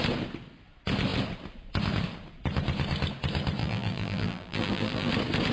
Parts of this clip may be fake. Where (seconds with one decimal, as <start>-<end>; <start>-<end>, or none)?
3.6-5.1